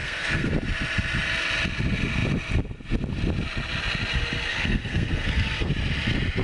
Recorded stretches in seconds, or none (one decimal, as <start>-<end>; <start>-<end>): 0.5-4.5; 5.7-6.4